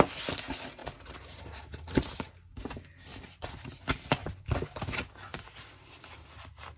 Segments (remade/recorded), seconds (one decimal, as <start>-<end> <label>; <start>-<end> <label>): 0.0-0.8 recorded; 0.8-2.3 remade; 2.3-5.3 recorded; 5.3-6.8 remade